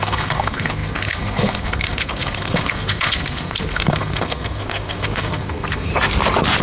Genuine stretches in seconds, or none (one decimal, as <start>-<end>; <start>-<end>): 5.9-6.6